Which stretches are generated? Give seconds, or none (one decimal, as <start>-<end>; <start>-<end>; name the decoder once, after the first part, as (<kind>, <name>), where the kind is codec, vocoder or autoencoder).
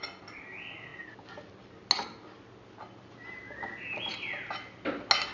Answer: none